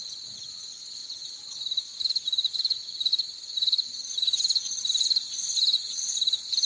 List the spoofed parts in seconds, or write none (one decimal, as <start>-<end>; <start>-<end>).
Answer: none